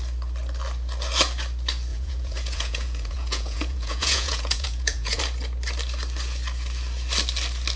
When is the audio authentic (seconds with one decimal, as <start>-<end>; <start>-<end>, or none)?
0.0-1.9; 5.2-7.8